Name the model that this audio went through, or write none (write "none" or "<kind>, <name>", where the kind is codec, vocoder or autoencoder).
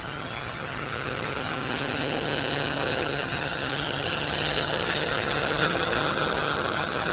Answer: vocoder, HiFi-GAN